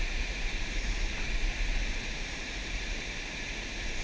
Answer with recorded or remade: recorded